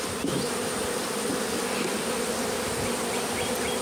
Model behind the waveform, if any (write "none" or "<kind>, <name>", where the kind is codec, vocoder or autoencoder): none